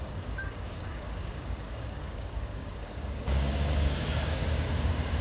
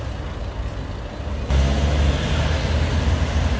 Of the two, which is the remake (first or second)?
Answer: first